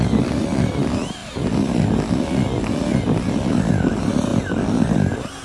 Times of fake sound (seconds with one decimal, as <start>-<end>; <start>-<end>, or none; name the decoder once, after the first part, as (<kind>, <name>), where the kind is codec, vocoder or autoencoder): none